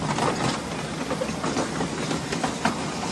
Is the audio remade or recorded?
recorded